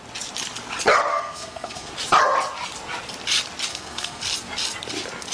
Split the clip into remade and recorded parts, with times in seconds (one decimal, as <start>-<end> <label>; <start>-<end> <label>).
0.0-1.1 recorded; 1.1-1.9 remade; 1.9-3.7 recorded; 3.7-4.2 remade; 4.2-5.3 recorded